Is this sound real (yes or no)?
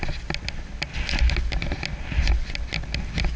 yes